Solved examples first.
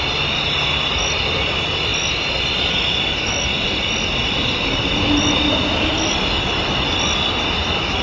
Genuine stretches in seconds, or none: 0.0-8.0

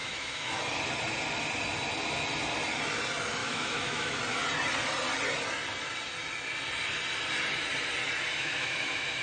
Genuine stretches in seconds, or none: 0.6-3.4; 4.2-8.4

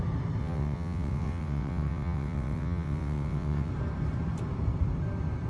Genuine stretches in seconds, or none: 0.0-0.4; 3.7-5.5